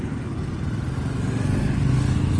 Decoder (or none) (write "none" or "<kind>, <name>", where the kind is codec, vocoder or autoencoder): none